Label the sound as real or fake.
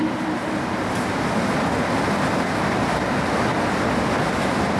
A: real